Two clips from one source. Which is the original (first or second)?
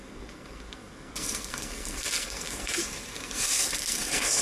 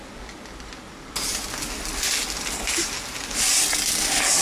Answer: second